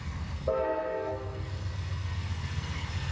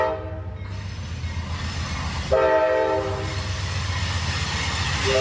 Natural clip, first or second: second